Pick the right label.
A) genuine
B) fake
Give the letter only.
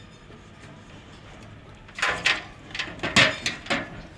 A